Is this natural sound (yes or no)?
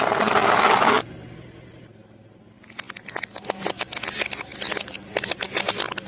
yes